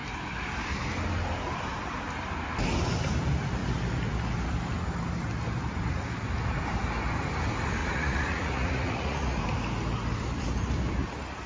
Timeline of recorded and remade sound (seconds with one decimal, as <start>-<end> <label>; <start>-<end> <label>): 0.0-7.8 recorded; 7.8-9.4 remade; 9.4-11.5 recorded